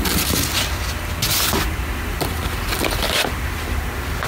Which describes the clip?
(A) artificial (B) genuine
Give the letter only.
B